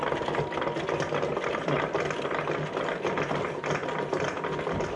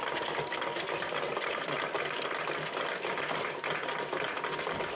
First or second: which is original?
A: first